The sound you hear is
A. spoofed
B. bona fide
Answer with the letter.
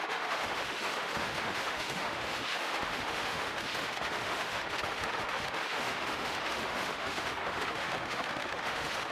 A